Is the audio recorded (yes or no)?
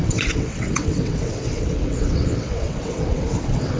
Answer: no